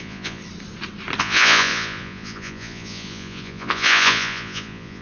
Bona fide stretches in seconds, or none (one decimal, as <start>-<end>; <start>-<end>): 0.4-1.2